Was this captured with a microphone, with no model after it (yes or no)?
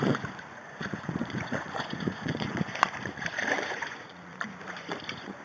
no